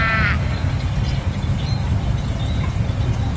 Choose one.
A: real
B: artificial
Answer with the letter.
B